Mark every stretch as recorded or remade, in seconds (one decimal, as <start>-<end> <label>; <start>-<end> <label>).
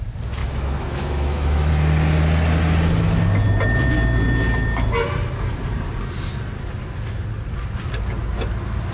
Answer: 0.0-0.4 recorded; 0.4-1.7 remade; 1.7-8.9 recorded